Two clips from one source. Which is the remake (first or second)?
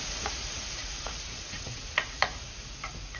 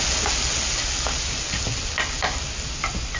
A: first